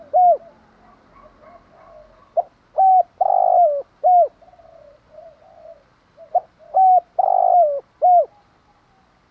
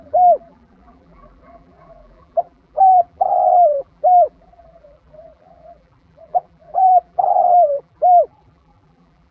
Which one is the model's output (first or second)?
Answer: second